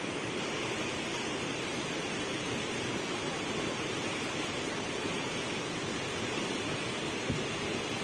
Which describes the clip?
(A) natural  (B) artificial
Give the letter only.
B